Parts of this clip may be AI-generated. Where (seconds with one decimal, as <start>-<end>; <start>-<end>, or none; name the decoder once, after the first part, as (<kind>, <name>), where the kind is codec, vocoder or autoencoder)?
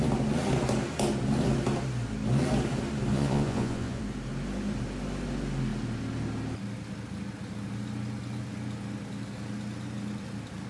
3.1-4.0 (vocoder, Vocos)